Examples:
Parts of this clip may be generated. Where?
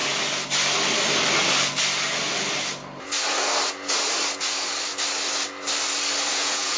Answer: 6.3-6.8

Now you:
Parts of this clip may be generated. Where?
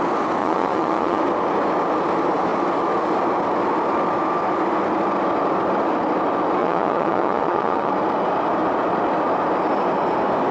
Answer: 0.4-1.2; 6.6-7.9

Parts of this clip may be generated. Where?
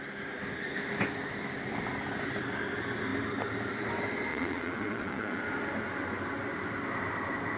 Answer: 4.3-5.4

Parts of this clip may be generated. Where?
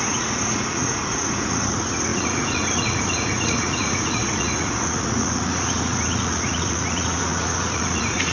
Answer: 0.0-8.3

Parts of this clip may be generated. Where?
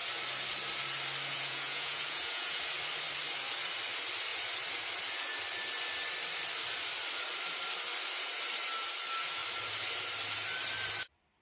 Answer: 1.3-2.6